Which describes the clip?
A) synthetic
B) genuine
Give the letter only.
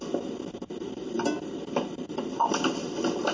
B